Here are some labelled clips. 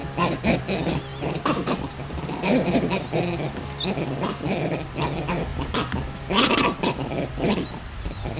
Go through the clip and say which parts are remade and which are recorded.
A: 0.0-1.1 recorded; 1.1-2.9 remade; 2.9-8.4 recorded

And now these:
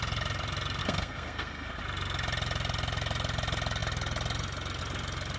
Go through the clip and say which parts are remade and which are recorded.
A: 0.0-0.8 recorded; 0.8-1.8 remade; 1.8-5.4 recorded

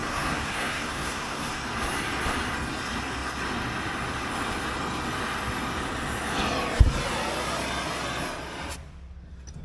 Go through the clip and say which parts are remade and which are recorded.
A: 0.0-1.5 remade; 1.5-9.6 recorded

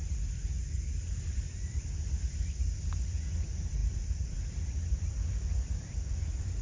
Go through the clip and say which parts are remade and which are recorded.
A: 0.0-6.6 remade

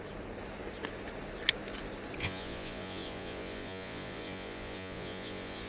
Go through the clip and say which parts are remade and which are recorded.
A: 0.0-2.2 recorded; 2.2-5.7 remade